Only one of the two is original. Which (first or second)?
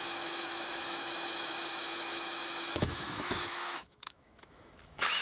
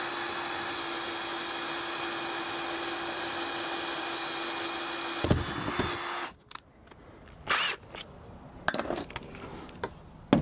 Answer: second